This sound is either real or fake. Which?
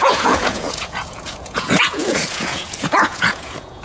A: fake